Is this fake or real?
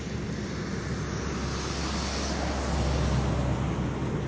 real